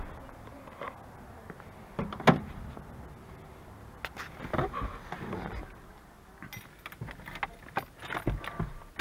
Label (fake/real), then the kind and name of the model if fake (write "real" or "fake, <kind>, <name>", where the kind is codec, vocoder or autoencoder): real